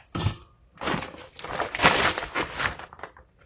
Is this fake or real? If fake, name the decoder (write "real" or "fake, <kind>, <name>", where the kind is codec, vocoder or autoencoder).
real